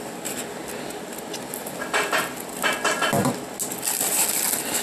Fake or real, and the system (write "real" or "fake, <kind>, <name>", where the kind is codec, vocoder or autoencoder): real